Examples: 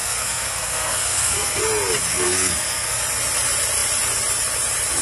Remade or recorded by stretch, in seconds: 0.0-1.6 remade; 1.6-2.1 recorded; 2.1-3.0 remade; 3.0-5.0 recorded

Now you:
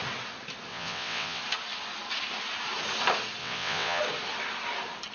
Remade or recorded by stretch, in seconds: 0.0-0.7 recorded; 0.7-1.4 remade; 1.4-3.4 recorded; 3.4-4.0 remade; 4.0-5.1 recorded

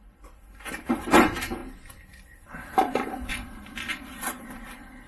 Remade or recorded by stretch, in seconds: 0.0-5.1 recorded

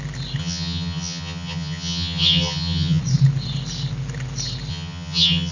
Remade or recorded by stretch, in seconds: 0.0-0.4 recorded; 0.4-3.0 remade; 3.0-4.7 recorded; 4.7-5.5 remade

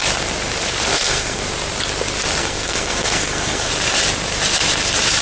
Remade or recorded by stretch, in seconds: 0.0-0.9 recorded; 0.9-1.4 remade; 1.4-2.4 recorded; 2.4-3.7 remade; 3.7-5.2 recorded

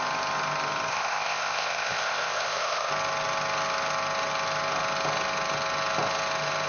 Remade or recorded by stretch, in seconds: 0.0-0.9 recorded; 0.9-2.9 remade; 2.9-6.7 recorded

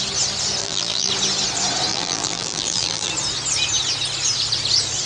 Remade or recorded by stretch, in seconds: 0.0-0.6 recorded; 0.6-1.1 remade; 1.1-1.9 recorded; 1.9-3.1 remade; 3.1-5.1 recorded